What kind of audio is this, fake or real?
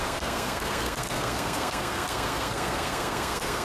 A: fake